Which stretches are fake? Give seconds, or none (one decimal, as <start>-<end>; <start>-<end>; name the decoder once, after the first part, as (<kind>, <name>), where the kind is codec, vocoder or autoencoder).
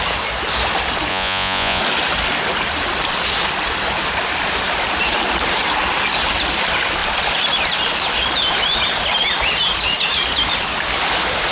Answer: 1.1-1.8 (vocoder, Vocos)